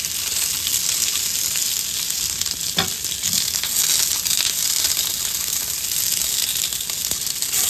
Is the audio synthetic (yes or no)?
no